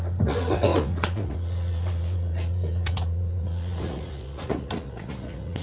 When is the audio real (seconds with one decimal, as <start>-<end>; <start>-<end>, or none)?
none